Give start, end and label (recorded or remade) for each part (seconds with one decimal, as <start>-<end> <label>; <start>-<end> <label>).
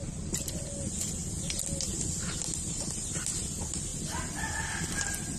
0.0-1.2 remade; 1.2-2.7 recorded; 2.7-3.9 remade; 3.9-5.4 recorded